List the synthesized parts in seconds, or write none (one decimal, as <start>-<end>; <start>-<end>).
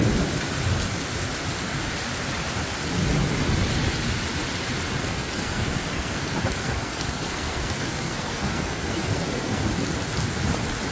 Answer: 5.0-9.6